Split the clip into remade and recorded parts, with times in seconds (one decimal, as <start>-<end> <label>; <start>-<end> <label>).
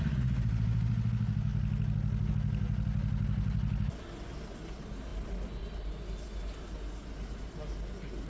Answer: 0.0-8.3 recorded